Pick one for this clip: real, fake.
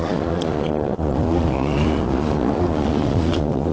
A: fake